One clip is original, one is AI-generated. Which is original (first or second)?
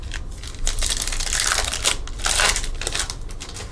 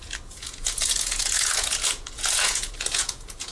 first